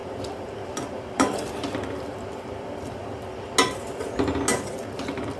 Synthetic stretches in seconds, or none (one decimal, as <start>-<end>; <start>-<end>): 0.0-3.2; 4.5-5.4